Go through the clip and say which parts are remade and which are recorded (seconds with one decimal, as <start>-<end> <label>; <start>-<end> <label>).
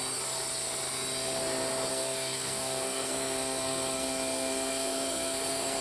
0.0-1.9 recorded; 1.9-5.8 remade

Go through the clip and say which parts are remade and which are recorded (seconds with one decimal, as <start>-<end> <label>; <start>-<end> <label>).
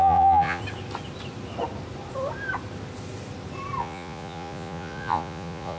0.0-0.6 remade; 0.6-3.8 recorded; 3.8-5.8 remade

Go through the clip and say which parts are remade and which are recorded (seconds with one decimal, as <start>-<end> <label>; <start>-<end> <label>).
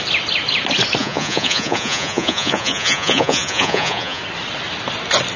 0.0-1.0 recorded; 1.0-4.2 remade; 4.2-5.4 recorded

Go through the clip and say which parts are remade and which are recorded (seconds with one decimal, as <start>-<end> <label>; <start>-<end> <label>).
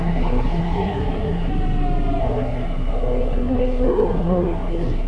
0.0-1.5 remade; 1.5-2.2 recorded; 2.2-5.1 remade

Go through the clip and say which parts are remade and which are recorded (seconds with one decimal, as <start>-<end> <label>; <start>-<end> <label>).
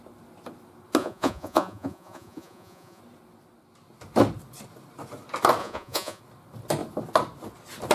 0.0-1.0 recorded; 1.0-3.0 remade; 3.0-5.6 recorded; 5.6-6.2 remade; 6.2-7.9 recorded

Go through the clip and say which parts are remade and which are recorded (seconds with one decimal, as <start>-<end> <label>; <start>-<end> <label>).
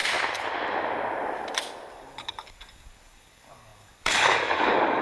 0.0-1.9 recorded; 1.9-5.0 remade